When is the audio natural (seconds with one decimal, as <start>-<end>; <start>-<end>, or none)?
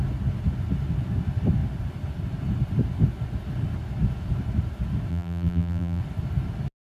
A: 0.0-5.1; 6.0-6.8